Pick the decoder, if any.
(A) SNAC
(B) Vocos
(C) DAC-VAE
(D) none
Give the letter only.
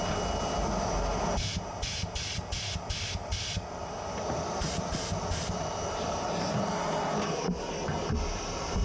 D